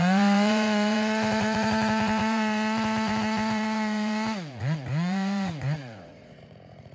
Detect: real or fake fake